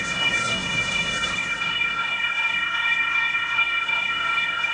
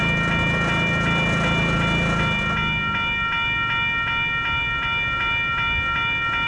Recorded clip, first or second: second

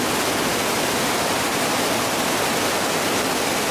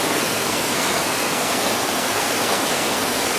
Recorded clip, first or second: first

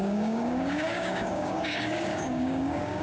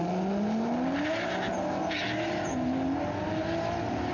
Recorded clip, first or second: second